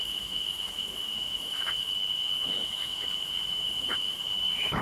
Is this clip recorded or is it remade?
remade